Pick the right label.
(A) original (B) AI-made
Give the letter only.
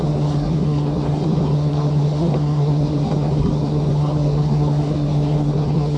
B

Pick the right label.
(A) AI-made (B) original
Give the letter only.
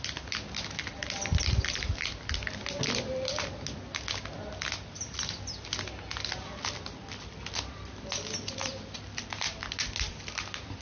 B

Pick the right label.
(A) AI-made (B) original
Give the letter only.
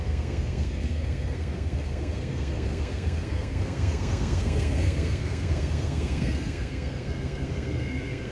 A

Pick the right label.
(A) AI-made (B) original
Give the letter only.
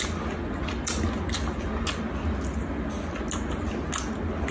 B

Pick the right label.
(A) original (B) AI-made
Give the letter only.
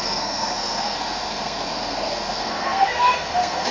B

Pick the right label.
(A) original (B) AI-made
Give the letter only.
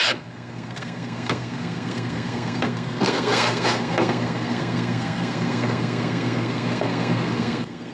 B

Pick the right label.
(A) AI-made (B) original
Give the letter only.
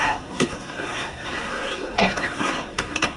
A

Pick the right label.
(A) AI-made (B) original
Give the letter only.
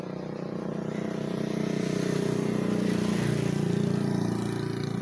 B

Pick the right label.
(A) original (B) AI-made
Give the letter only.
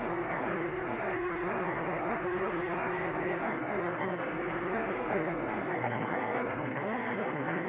B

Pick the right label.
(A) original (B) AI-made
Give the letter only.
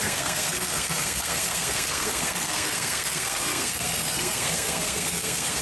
B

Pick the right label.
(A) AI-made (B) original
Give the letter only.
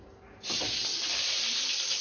B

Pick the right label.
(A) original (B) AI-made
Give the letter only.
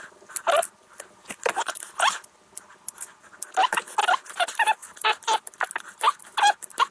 A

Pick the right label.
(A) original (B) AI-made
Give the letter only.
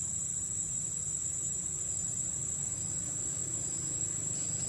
A